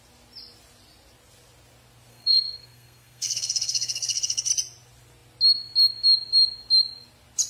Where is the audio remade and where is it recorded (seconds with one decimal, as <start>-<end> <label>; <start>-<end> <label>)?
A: 0.0-2.1 recorded; 2.1-4.5 remade; 4.5-7.5 recorded